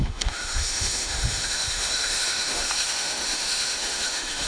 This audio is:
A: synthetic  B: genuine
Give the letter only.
A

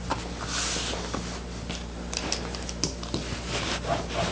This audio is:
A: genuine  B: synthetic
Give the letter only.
A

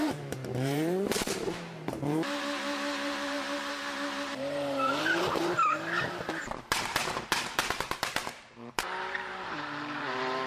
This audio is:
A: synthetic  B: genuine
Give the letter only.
A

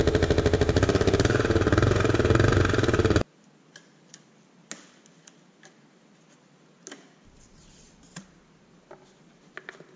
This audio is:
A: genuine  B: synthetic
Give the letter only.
A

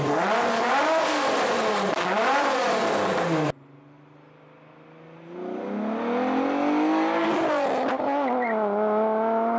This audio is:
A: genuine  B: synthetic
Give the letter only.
A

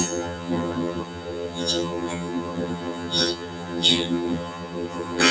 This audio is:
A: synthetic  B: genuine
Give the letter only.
A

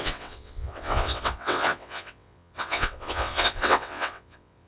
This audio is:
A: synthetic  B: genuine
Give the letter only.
A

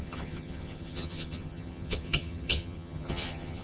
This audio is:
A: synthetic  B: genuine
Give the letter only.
A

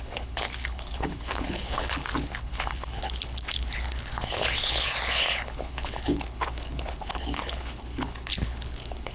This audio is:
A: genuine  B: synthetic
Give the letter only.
B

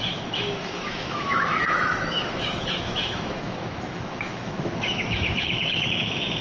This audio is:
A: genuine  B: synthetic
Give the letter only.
B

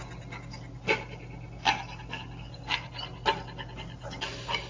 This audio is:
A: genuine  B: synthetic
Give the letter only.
A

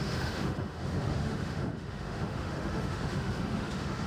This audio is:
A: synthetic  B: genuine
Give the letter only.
A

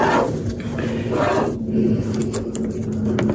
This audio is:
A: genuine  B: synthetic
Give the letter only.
A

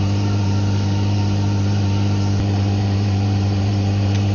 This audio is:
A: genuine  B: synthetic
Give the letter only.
B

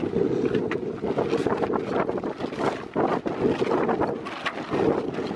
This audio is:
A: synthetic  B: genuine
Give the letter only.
B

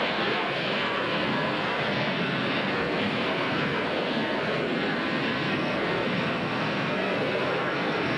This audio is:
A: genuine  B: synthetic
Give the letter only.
B